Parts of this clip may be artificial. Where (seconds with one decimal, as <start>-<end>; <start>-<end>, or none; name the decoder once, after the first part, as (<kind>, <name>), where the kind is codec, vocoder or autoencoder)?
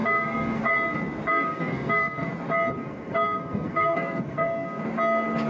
0.0-0.6 (codec, SNAC); 1.3-2.3; 2.8-4.8